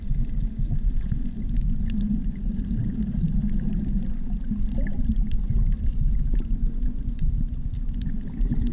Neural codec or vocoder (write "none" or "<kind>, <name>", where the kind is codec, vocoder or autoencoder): none